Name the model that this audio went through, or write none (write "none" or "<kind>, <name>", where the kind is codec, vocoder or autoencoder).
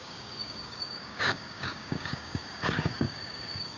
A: codec, DAC